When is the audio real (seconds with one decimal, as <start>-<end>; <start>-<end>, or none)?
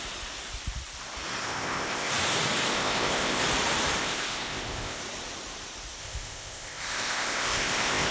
0.0-1.4; 2.1-2.7; 3.4-4.0; 5.0-6.0